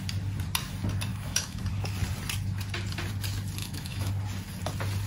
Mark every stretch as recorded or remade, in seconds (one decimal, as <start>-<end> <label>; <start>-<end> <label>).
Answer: 0.0-1.1 recorded; 1.1-1.6 remade; 1.6-3.6 recorded; 3.6-4.1 remade; 4.1-5.1 recorded